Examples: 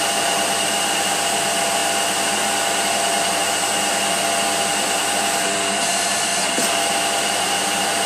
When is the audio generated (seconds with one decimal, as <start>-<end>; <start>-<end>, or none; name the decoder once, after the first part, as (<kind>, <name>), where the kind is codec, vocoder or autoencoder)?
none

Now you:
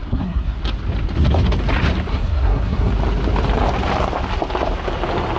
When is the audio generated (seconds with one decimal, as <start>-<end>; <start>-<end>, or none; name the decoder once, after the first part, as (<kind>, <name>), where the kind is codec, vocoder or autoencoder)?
0.0-0.6 (codec, SNAC); 2.1-2.9

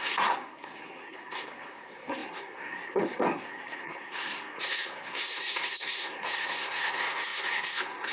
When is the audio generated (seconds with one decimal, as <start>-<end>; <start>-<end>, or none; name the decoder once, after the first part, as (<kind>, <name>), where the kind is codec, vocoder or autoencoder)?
0.0-8.1 (codec, SNAC)

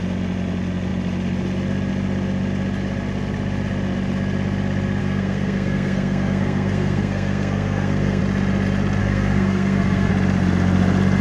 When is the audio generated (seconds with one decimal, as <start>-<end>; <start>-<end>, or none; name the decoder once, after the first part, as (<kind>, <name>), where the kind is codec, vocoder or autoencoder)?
5.0-8.2 (codec, SNAC); 9.0-10.1

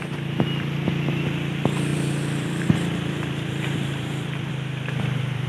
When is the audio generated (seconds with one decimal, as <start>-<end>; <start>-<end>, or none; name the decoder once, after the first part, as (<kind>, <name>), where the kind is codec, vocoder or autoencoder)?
1.9-5.5 (vocoder, BigVGAN v2)

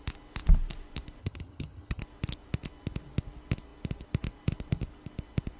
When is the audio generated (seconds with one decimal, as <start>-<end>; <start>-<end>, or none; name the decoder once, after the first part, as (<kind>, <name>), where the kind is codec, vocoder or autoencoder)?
1.2-2.0 (vocoder, HiFi-GAN)

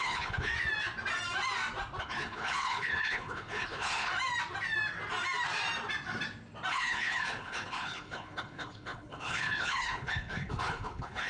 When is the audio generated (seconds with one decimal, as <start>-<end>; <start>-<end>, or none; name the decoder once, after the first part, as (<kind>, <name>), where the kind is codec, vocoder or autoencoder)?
0.0-0.5 (codec, HILCodec); 2.0-4.1; 6.7-11.3

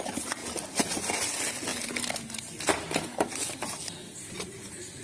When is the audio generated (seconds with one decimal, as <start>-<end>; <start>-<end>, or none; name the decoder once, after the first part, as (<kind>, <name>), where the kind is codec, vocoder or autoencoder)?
none